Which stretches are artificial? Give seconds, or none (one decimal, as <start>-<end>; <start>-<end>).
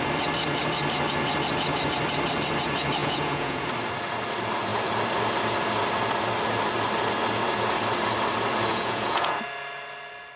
3.0-3.7; 8.7-9.4